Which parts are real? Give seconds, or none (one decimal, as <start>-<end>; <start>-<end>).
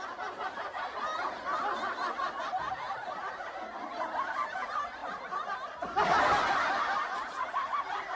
0.0-8.2